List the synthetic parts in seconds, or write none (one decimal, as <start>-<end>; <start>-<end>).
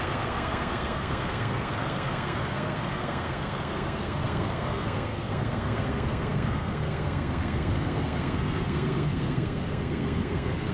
0.0-10.7